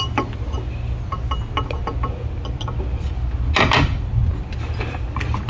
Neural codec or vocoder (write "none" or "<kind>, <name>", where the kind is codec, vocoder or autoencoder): none